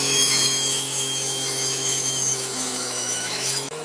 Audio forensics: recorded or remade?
remade